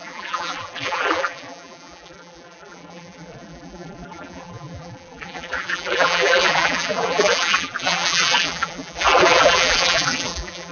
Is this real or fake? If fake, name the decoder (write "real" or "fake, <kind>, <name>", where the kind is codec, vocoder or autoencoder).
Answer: fake, vocoder, BigVGAN v2